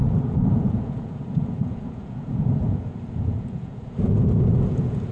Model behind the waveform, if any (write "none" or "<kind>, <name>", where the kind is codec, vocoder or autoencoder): vocoder, Vocos